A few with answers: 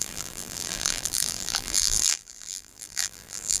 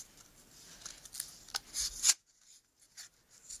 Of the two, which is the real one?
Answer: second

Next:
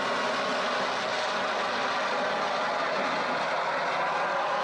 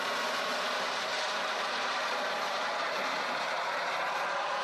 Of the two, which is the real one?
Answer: first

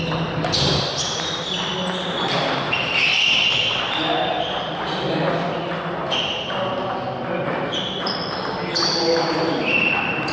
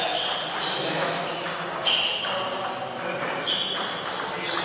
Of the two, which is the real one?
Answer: second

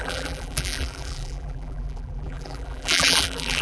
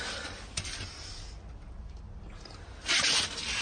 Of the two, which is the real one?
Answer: second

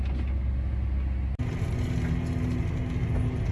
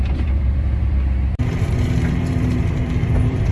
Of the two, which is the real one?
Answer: first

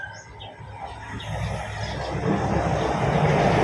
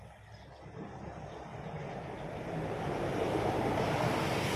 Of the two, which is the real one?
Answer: first